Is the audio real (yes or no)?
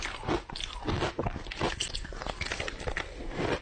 yes